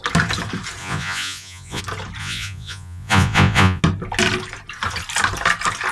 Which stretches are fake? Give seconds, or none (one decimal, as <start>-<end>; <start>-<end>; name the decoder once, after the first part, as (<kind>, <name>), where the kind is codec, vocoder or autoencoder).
0.8-1.8 (vocoder, Vocos); 2.2-3.8